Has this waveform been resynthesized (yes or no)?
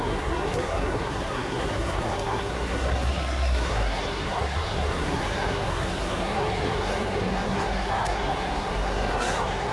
yes